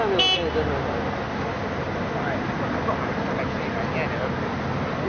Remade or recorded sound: recorded